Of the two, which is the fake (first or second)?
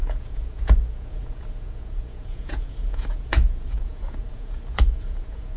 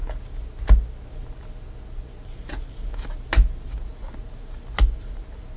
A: first